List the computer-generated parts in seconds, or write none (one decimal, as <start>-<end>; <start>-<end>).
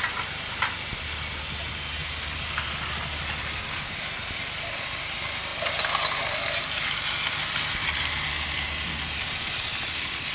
none